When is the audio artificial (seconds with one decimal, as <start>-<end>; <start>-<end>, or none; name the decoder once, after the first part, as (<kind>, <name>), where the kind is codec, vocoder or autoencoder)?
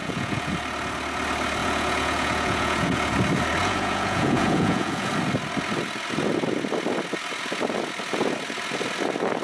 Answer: 0.0-0.5 (vocoder, Vocos); 1.6-3.2; 3.6-5.1